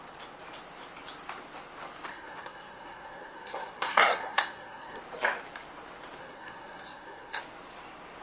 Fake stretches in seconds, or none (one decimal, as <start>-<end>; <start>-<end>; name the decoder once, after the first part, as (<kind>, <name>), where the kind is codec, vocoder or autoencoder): 2.1-5.0 (codec, SNAC); 6.2-7.4